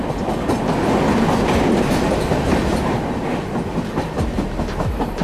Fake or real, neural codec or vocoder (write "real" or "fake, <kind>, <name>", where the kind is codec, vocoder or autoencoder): real